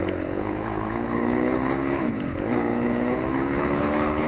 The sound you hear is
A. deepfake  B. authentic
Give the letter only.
A